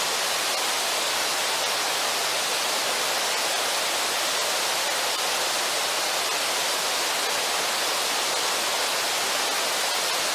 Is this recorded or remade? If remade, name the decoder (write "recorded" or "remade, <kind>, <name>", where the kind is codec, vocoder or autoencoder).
recorded